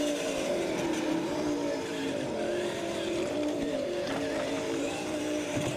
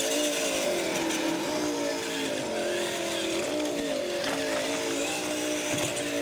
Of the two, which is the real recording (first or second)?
second